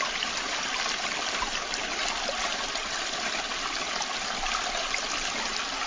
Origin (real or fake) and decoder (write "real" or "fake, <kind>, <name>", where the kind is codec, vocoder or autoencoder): real